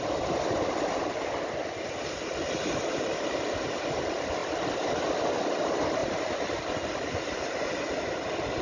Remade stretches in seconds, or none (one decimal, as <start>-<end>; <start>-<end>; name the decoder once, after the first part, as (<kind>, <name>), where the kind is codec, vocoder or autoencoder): none